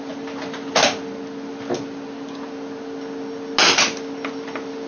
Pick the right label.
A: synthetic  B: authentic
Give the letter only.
B